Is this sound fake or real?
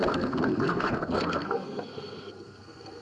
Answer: fake